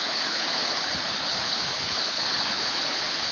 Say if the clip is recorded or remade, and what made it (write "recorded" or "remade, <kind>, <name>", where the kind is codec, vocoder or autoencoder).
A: remade, codec, HILCodec